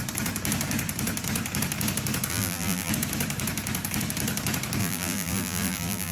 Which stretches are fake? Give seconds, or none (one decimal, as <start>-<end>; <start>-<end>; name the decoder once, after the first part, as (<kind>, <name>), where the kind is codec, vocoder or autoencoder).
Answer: 2.3-2.9 (vocoder, BigVGAN v2); 4.8-6.1